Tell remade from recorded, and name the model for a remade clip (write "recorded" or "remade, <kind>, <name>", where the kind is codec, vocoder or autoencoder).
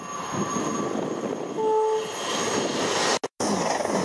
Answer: recorded